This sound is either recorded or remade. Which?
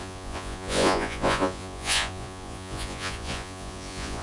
remade